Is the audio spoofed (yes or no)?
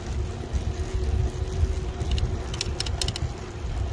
no